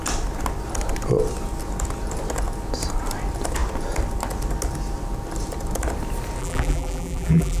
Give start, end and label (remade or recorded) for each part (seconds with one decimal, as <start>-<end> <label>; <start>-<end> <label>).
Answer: 0.0-6.4 recorded; 6.4-7.6 remade